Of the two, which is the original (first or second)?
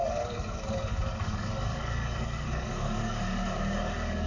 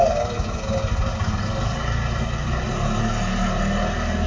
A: second